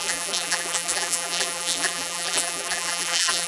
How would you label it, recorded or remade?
remade